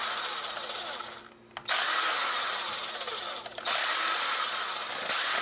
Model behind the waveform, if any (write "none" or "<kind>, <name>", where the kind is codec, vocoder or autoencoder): none